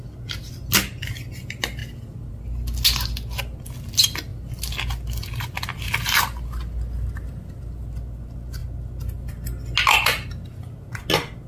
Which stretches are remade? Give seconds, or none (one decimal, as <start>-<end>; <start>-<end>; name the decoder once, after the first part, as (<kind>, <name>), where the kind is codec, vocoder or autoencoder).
none